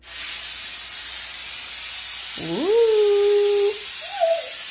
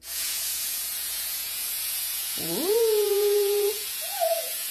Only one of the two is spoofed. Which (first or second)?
second